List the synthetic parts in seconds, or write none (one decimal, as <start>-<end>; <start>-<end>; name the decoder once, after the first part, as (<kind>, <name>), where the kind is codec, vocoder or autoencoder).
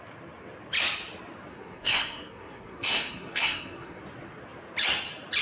1.5-4.0 (codec, SNAC)